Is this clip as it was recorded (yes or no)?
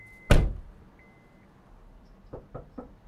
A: yes